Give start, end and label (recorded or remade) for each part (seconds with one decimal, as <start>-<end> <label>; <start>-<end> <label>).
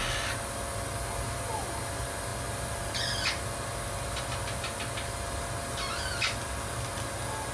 0.0-7.5 recorded